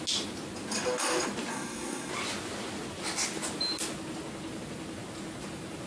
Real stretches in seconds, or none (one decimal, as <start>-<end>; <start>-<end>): 0.0-1.5; 2.1-5.9